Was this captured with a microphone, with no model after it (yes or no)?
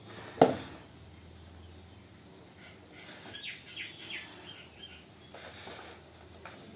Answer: yes